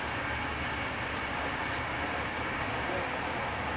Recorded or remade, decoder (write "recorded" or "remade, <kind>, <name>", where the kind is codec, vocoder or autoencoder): recorded